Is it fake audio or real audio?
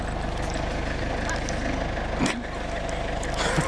real